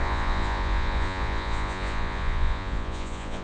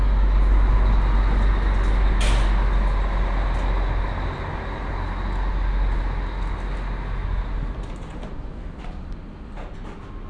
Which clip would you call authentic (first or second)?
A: second